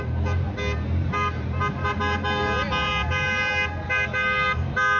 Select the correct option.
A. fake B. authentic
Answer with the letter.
B